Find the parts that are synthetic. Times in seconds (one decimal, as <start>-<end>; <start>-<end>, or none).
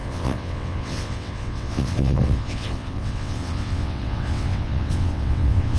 0.0-5.8